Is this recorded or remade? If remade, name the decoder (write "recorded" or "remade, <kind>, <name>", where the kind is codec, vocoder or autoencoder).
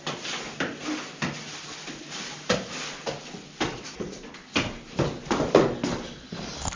recorded